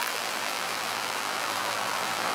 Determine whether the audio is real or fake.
fake